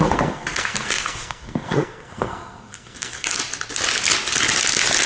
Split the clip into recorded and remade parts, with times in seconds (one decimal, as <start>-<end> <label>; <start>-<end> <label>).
0.0-3.4 remade; 3.4-5.1 recorded